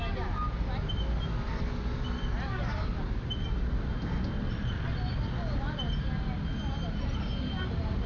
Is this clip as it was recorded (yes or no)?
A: yes